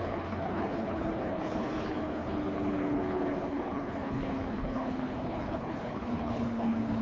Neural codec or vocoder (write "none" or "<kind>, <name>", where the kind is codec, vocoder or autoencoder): codec, HILCodec